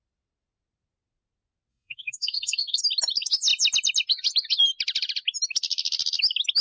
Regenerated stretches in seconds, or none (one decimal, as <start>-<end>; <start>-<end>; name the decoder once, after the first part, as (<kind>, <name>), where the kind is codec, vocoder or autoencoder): 1.7-2.8 (codec, SNAC)